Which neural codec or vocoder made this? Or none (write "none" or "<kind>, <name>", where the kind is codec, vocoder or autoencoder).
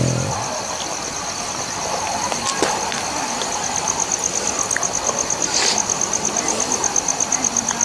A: none